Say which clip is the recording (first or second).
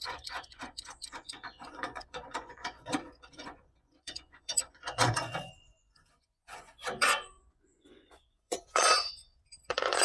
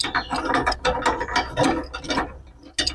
second